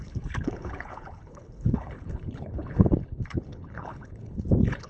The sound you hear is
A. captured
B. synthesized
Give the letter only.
B